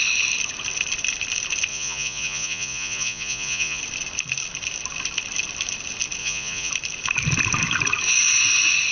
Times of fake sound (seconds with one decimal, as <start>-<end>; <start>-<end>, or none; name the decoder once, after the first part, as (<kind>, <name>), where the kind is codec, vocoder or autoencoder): 1.7-3.8 (vocoder, Vocos); 6.2-6.7